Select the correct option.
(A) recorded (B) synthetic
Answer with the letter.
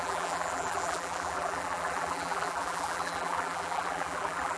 B